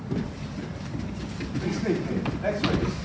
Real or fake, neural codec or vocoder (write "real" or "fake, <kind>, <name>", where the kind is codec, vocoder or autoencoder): real